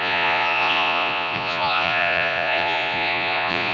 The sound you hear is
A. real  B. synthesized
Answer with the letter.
B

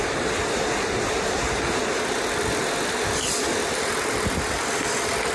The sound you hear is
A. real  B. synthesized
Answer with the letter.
A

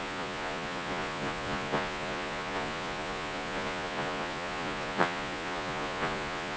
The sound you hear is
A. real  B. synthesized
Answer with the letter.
B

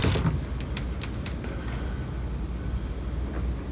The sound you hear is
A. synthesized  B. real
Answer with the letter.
B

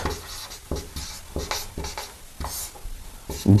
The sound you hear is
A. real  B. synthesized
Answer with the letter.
A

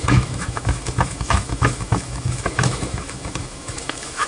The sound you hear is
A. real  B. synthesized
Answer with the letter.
B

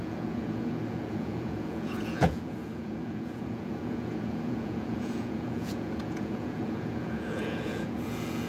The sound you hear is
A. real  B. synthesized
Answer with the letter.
B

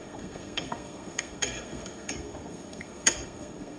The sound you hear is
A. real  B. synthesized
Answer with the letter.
B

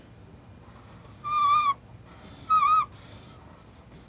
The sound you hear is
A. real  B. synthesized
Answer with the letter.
A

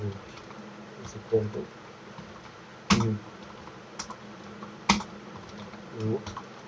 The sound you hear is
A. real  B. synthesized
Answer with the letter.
A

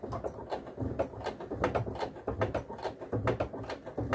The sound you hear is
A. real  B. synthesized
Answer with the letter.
A